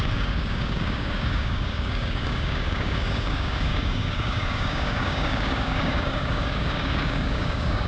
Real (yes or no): no